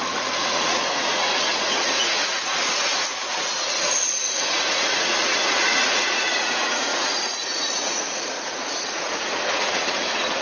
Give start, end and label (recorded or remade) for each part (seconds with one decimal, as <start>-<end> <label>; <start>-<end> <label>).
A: 0.0-10.4 remade